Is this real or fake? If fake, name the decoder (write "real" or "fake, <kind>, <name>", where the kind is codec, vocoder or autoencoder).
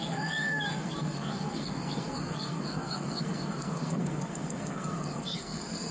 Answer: fake, codec, SNAC